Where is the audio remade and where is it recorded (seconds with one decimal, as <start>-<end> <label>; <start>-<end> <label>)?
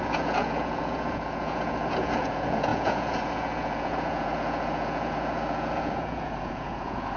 0.0-7.2 remade